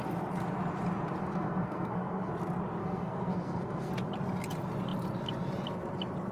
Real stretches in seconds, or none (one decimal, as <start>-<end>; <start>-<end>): 0.0-1.2; 2.3-2.8; 3.9-6.3